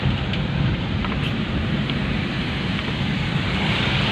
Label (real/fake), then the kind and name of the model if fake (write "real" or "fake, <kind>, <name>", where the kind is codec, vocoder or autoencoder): fake, vocoder, BigVGAN v2